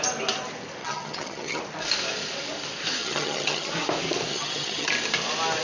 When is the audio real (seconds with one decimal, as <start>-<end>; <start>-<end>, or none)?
0.0-0.8; 1.6-3.0; 3.7-4.3; 4.9-5.6